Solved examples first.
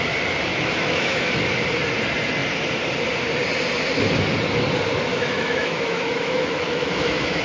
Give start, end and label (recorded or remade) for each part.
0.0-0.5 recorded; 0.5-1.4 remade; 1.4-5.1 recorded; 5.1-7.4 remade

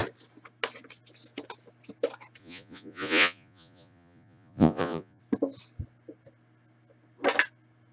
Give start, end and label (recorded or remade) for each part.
0.0-2.4 recorded; 2.4-5.2 remade; 5.2-7.9 recorded